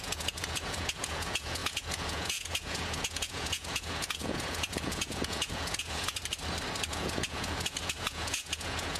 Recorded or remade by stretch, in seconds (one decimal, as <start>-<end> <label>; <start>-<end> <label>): 0.0-6.2 remade; 6.2-6.9 recorded; 6.9-9.0 remade